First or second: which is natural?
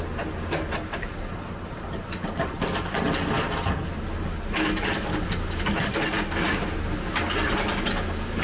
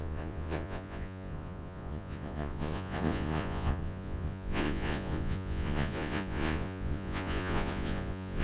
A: first